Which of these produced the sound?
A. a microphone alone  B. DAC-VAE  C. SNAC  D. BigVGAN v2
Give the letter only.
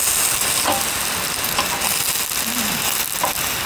A